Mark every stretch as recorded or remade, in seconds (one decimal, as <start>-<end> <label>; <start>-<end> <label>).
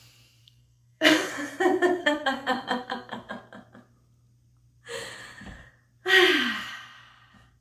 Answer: 0.0-0.4 recorded; 0.4-1.3 remade; 1.3-2.0 recorded; 2.0-3.3 remade; 3.3-7.6 recorded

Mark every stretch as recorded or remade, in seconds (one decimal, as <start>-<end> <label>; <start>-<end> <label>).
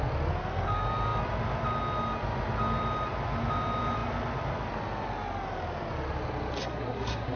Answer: 0.0-6.6 recorded; 6.6-7.4 remade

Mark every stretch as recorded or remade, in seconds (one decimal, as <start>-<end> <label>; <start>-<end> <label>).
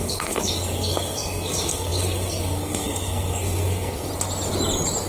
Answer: 0.0-4.1 remade; 4.1-5.1 recorded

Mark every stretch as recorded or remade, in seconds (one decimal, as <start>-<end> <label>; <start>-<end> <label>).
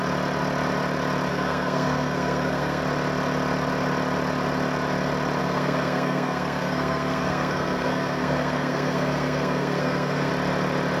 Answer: 0.0-1.3 recorded; 1.3-2.8 remade; 2.8-5.4 recorded; 5.4-10.3 remade; 10.3-11.0 recorded